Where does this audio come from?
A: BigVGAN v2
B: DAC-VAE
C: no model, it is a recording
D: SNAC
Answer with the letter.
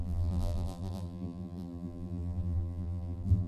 A